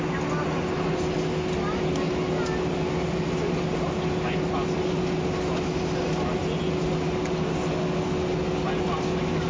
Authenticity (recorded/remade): recorded